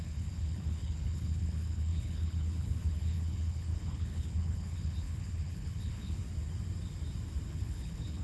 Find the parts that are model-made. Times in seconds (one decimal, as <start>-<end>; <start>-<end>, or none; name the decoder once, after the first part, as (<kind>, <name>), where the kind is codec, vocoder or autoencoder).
0.0-6.2 (codec, HILCodec); 7.5-8.2